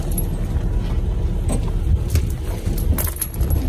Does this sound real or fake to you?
real